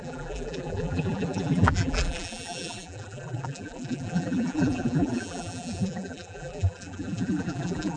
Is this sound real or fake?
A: fake